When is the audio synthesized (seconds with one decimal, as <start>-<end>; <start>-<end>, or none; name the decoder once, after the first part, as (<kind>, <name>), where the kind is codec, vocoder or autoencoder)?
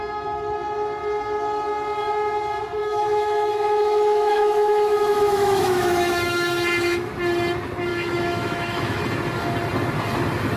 2.8-7.1 (autoencoder, DAC-VAE); 7.9-9.0